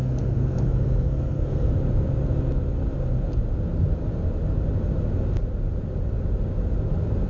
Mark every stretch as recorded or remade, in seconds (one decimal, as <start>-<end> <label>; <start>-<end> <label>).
0.0-1.7 remade; 1.7-7.3 recorded